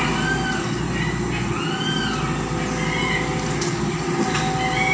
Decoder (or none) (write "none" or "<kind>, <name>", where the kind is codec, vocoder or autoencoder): none